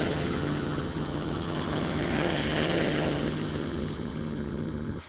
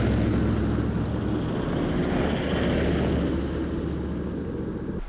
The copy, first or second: first